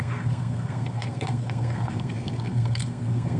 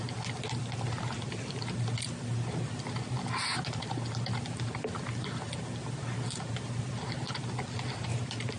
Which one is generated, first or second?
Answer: first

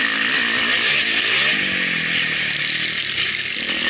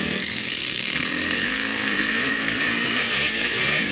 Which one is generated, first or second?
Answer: second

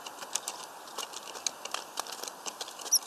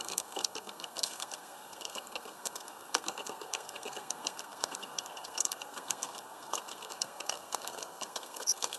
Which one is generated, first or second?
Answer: second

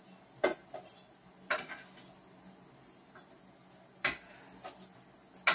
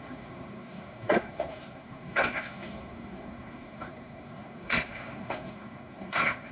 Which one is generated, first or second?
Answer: second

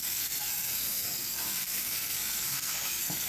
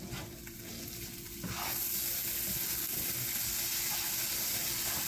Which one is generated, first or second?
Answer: first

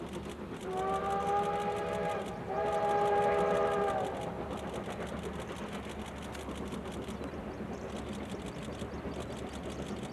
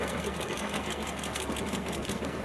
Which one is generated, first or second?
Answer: second